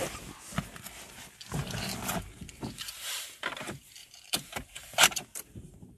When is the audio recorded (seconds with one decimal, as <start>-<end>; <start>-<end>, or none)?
0.0-1.6; 3.6-4.0